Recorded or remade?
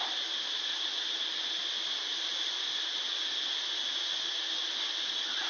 recorded